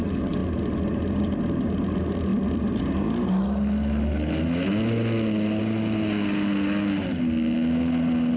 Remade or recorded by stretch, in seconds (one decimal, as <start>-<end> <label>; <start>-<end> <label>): 0.0-8.4 recorded